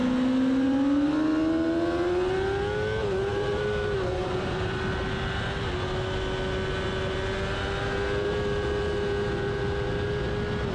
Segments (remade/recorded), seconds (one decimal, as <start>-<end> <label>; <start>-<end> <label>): 0.0-3.3 recorded; 3.3-4.9 remade; 4.9-10.7 recorded